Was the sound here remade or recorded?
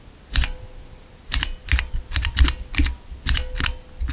recorded